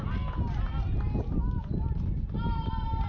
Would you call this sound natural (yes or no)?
yes